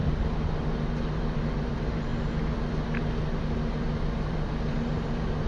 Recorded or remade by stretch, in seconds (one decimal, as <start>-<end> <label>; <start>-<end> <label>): 0.0-1.4 recorded; 1.4-2.1 remade; 2.1-4.7 recorded; 4.7-5.5 remade